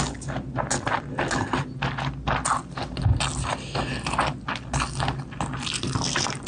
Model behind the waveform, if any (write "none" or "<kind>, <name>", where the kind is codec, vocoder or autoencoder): none